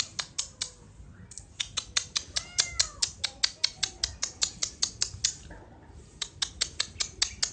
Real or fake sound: real